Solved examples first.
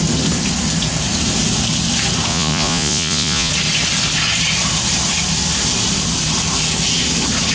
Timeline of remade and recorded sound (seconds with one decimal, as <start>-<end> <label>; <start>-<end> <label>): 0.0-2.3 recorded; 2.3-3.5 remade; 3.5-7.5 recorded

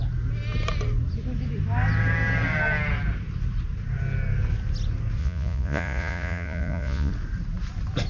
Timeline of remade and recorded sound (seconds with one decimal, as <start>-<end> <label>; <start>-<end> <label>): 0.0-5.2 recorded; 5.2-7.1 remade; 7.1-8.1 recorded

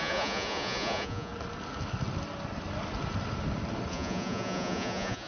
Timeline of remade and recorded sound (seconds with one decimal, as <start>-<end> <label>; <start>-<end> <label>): 0.0-1.3 remade; 1.3-3.9 recorded; 3.9-5.3 remade

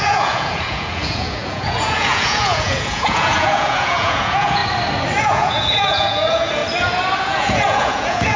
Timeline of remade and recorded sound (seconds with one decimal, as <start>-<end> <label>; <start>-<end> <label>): 0.0-4.6 remade; 4.6-5.2 recorded; 5.2-6.6 remade; 6.6-7.2 recorded; 7.2-8.4 remade

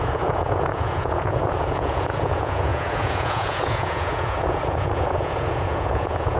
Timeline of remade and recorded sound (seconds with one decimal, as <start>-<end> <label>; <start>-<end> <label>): 0.0-6.4 remade

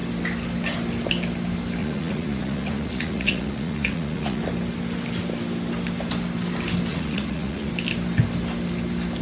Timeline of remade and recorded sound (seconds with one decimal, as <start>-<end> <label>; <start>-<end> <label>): 0.0-1.8 recorded; 1.8-4.4 remade; 4.4-6.9 recorded; 6.9-7.7 remade; 7.7-9.2 recorded

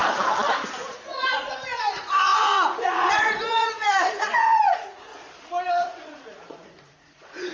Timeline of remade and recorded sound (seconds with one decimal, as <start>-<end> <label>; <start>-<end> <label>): 0.0-0.7 recorded; 0.7-5.1 remade; 5.1-5.7 recorded; 5.7-7.5 remade

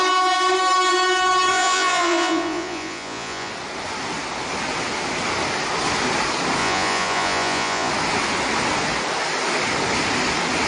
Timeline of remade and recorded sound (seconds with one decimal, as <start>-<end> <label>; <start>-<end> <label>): 0.0-1.5 recorded; 1.5-3.5 remade; 3.5-6.6 recorded; 6.6-7.9 remade; 7.9-10.7 recorded